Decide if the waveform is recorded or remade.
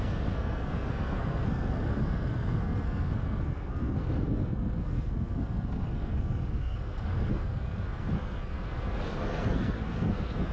remade